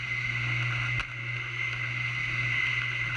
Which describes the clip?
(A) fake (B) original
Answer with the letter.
B